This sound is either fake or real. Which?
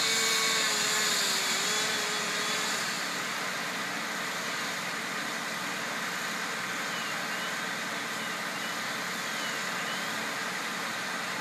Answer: real